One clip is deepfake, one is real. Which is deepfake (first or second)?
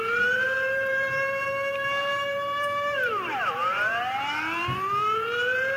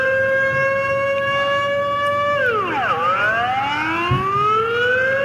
first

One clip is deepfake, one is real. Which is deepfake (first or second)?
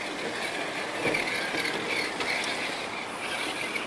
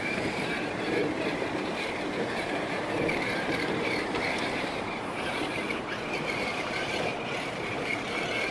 second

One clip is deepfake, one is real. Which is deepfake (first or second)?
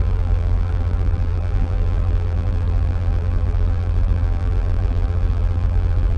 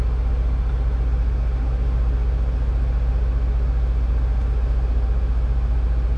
first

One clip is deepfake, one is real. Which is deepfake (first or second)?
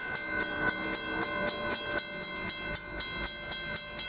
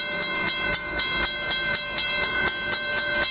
second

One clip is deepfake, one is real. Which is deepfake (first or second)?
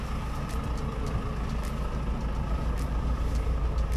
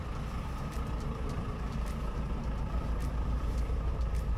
second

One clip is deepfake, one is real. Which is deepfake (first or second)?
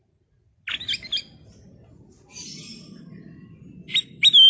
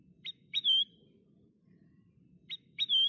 second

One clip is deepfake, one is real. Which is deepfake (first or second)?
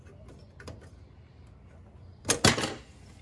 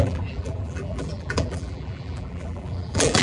second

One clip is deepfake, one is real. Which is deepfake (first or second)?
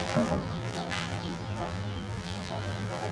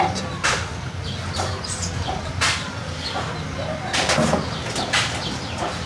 first